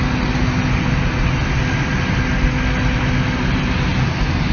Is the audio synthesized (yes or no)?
no